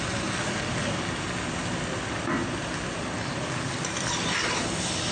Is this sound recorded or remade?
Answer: recorded